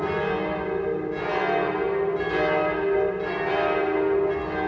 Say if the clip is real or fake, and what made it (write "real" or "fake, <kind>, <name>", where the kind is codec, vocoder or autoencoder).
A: real